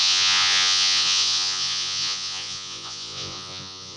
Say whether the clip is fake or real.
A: fake